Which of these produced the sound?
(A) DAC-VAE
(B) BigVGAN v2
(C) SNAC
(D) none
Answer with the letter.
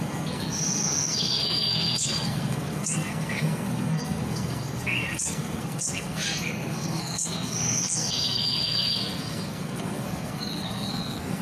C